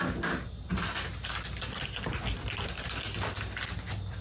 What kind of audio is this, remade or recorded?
recorded